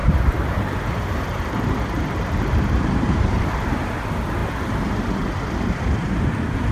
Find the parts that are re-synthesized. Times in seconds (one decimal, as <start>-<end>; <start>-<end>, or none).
0.0-3.5